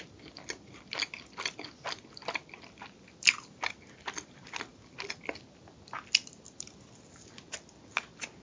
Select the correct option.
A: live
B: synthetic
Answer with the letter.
A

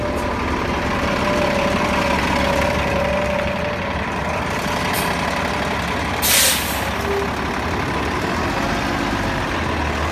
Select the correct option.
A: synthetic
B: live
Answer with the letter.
B